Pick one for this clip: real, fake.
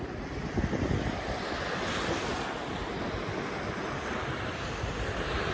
real